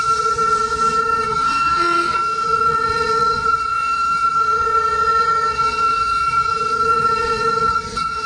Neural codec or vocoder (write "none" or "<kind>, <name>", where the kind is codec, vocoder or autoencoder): vocoder, Vocos